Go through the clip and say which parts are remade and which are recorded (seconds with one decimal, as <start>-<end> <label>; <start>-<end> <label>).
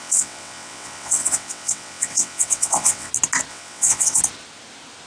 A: 0.0-3.1 remade; 3.1-3.5 recorded; 3.5-4.2 remade; 4.2-5.1 recorded